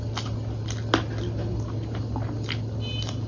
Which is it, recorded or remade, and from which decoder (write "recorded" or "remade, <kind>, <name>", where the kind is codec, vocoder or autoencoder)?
recorded